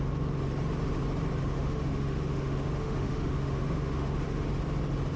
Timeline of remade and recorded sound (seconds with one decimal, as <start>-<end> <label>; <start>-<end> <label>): 0.0-1.4 recorded; 1.4-4.5 remade; 4.5-5.2 recorded